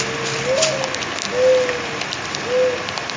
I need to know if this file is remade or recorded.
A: recorded